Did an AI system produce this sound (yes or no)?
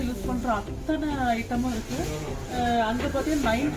no